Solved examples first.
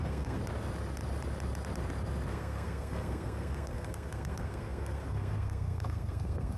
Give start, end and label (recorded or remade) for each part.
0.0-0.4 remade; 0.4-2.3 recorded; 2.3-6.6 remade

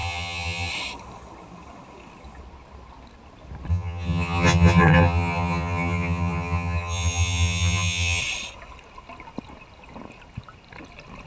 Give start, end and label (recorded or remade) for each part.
0.0-0.7 remade; 0.7-3.7 recorded; 3.7-8.2 remade; 8.2-11.3 recorded

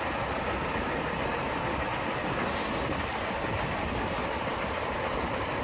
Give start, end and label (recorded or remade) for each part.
0.0-1.4 remade; 1.4-4.4 recorded; 4.4-5.6 remade

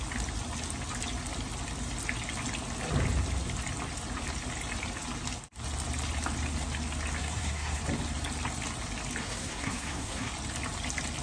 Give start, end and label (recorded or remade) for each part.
0.0-7.2 recorded; 7.2-7.8 remade; 7.8-9.2 recorded; 9.2-10.3 remade; 10.3-11.2 recorded

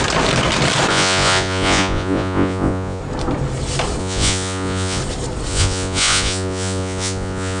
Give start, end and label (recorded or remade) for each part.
0.0-0.9 recorded; 0.9-3.0 remade; 3.0-4.0 recorded; 4.0-5.0 remade; 5.0-5.5 recorded; 5.5-7.6 remade